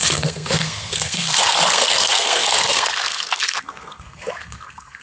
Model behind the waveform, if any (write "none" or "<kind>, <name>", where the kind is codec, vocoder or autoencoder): codec, SNAC